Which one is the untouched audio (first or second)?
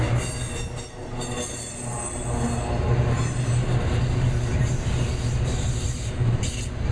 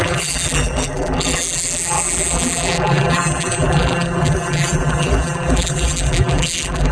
first